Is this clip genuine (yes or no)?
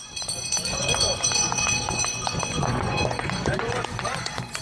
no